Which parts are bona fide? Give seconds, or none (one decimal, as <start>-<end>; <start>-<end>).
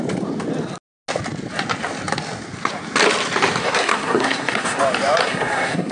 0.0-3.6; 4.8-5.2